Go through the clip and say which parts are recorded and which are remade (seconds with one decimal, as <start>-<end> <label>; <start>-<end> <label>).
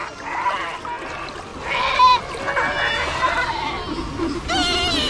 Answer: 0.0-5.1 recorded